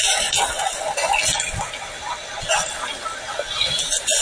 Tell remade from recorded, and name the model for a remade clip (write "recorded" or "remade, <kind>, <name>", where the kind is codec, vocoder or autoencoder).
recorded